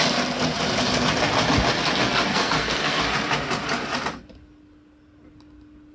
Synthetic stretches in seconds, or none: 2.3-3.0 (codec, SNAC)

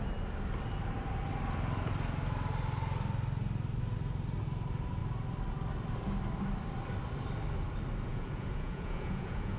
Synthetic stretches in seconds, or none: 8.1-9.6 (vocoder, Vocos)